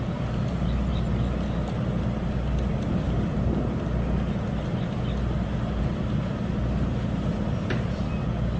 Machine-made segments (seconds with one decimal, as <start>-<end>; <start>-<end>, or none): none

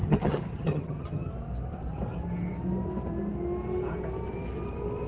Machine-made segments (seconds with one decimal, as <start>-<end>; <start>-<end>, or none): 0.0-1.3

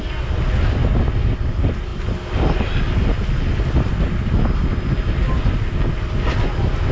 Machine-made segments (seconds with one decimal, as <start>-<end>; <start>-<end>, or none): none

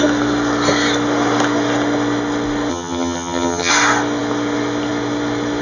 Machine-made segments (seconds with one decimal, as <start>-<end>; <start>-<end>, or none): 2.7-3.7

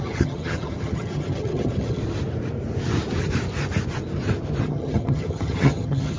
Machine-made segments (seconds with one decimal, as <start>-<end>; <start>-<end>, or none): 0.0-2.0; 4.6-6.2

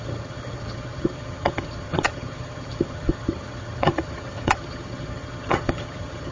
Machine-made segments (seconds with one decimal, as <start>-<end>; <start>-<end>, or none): 0.0-6.3